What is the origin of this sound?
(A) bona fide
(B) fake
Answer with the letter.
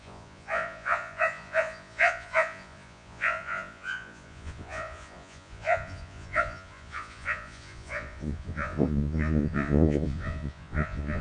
B